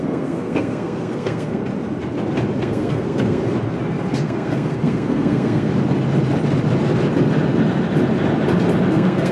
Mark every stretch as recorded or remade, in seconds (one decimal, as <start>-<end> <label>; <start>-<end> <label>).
0.0-1.6 remade; 1.6-2.6 recorded; 2.6-3.4 remade; 3.4-4.1 recorded; 4.1-5.7 remade; 5.7-8.9 recorded; 8.9-9.3 remade